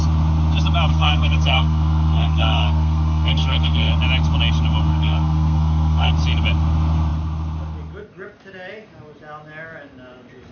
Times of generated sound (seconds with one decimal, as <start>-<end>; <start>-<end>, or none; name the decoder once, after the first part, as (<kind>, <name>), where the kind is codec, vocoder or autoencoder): 0.9-3.9 (codec, SNAC); 4.9-6.1